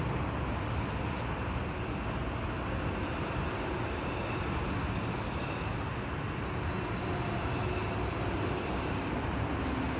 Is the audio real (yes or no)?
yes